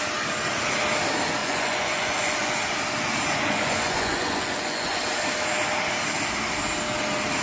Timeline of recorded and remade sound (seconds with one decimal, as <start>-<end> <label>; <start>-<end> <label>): 0.0-1.4 recorded; 1.4-2.5 remade; 2.5-3.3 recorded; 3.3-5.0 remade; 5.0-7.4 recorded